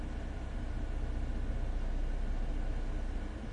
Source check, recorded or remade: recorded